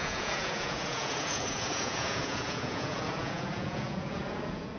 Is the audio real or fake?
fake